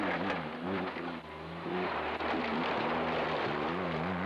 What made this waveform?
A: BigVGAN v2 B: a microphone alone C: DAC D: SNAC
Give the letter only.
B